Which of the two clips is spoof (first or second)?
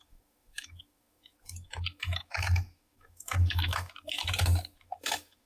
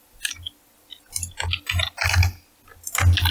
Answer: first